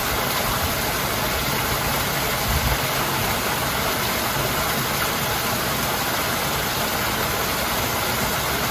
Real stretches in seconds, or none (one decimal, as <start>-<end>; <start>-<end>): 0.0-8.7